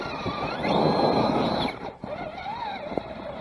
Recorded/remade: recorded